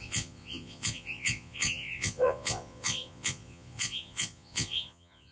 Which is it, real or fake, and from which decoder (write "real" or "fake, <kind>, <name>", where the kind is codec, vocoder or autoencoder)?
fake, vocoder, Vocos